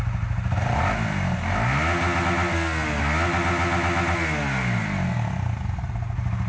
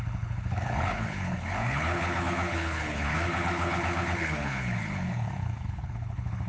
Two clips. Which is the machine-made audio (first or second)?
second